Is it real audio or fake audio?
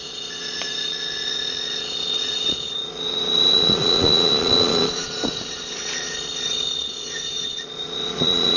fake